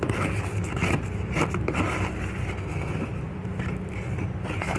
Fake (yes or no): no